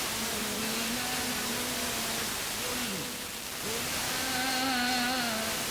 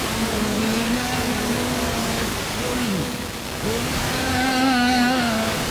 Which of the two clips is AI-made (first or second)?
second